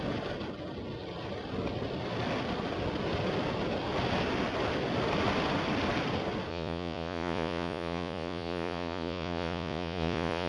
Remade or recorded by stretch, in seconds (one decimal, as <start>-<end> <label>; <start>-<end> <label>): 0.0-6.5 recorded; 6.5-10.5 remade